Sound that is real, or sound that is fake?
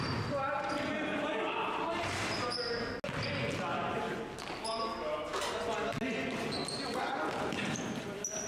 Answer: real